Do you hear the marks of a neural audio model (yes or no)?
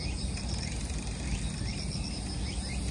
no